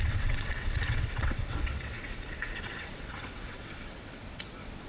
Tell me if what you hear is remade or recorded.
remade